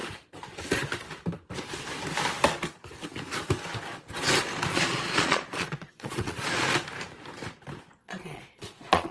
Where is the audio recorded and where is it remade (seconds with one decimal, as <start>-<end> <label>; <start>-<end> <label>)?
0.0-4.7 recorded; 4.7-6.7 remade; 6.7-8.0 recorded; 8.0-9.1 remade

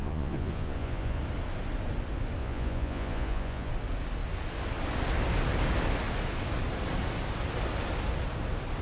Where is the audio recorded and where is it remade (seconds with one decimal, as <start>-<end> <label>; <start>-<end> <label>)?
0.0-1.2 remade; 1.2-2.4 recorded; 2.4-3.7 remade; 3.7-8.8 recorded

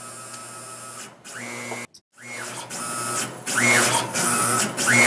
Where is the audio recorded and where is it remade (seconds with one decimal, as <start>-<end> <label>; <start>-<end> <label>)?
0.0-4.1 recorded; 4.1-4.6 remade; 4.6-5.1 recorded